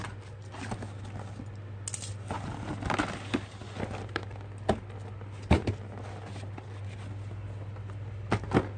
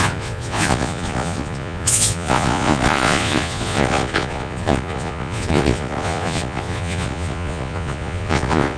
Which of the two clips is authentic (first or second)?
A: first